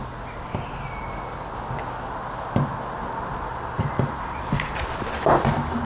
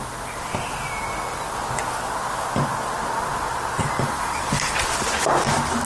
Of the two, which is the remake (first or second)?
first